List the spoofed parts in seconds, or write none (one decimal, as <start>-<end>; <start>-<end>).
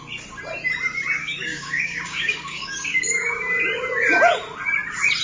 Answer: 1.2-3.6